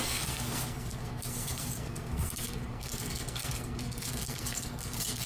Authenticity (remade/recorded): remade